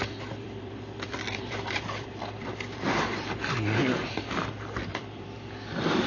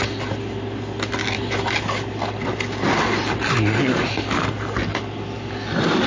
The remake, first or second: first